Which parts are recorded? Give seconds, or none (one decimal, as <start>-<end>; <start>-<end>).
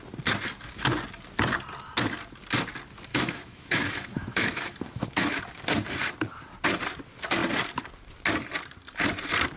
0.0-3.1; 5.4-9.6